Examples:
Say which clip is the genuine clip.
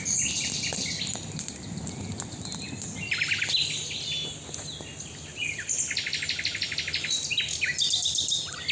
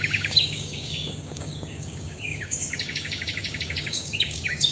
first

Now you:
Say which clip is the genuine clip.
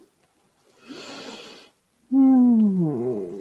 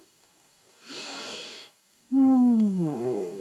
first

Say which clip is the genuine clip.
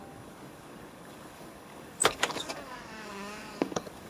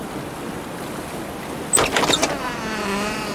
second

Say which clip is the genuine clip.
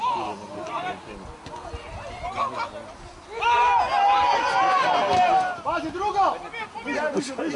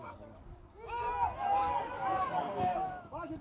first